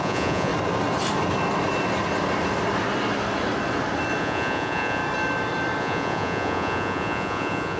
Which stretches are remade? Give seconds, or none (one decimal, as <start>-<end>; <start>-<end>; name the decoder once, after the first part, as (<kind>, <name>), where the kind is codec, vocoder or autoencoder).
0.0-0.5 (vocoder, Vocos); 4.2-5.0; 5.8-7.8